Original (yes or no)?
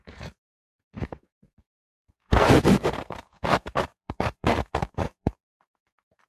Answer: no